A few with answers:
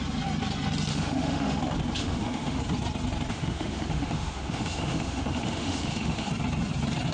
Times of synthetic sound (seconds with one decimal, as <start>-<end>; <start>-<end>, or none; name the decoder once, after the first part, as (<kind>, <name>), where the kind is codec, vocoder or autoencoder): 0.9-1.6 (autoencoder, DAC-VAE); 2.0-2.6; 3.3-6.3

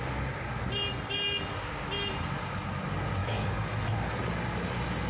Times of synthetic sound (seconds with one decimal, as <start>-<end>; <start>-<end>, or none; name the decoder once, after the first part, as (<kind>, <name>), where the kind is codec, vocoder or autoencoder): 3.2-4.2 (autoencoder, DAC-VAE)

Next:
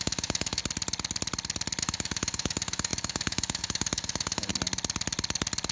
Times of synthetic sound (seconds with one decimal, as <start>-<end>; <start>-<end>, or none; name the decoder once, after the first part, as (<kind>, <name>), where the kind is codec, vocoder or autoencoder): 0.0-0.6 (autoencoder, DAC-VAE); 1.8-4.5

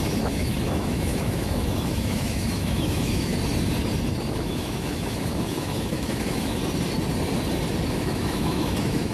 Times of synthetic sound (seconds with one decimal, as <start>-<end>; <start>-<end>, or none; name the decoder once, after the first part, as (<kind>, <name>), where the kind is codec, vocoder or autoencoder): 0.0-3.3 (autoencoder, DAC-VAE); 4.3-6.6; 7.9-9.1

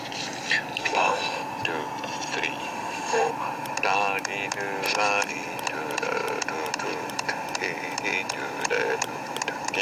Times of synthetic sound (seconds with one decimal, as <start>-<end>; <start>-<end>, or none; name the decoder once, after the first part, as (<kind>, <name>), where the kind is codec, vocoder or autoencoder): 0.8-1.4 (autoencoder, DAC-VAE); 2.6-3.3

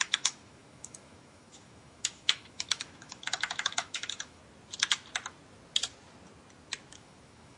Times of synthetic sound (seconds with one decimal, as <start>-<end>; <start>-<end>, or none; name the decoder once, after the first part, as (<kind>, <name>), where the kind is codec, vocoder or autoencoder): 0.0-4.4 (autoencoder, DAC-VAE); 6.9-7.6

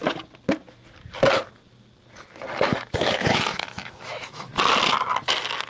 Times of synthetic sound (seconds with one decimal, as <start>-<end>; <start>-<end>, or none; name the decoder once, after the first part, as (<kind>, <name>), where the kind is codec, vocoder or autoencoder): 2.7-4.5 (autoencoder, DAC-VAE)